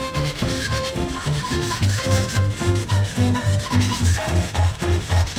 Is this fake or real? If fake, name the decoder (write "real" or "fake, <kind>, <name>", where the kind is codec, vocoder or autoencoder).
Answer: fake, autoencoder, DAC-VAE